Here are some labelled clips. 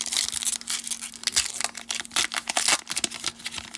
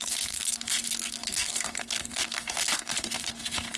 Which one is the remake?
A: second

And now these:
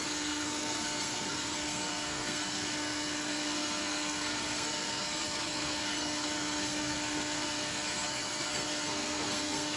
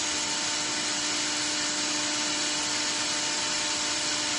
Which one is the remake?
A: first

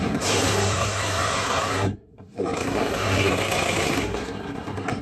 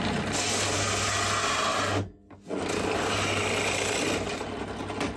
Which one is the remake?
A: first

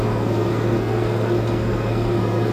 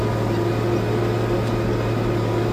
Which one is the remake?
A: first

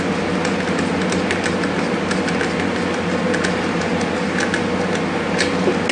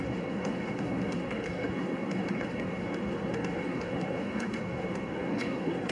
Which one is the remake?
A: second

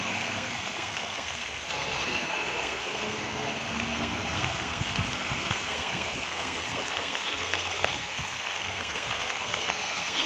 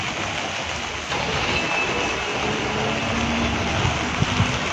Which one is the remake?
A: first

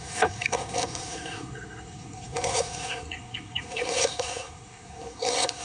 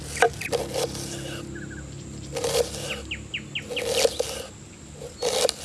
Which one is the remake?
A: first